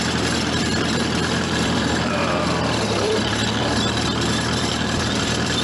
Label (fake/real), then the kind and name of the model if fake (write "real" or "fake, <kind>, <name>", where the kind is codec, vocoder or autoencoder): fake, vocoder, BigVGAN v2